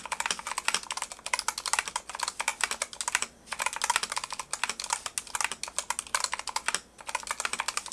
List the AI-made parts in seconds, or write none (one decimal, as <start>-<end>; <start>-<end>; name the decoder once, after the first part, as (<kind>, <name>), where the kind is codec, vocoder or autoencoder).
none